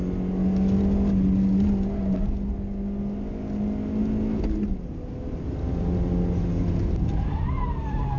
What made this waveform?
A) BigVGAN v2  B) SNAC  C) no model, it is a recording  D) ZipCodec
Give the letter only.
C